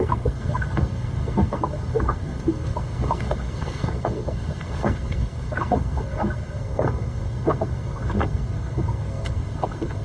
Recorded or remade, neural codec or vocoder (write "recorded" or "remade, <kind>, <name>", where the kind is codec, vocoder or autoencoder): remade, codec, SNAC